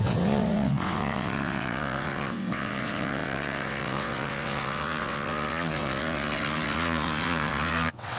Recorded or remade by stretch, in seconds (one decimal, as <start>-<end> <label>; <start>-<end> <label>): 0.0-8.2 remade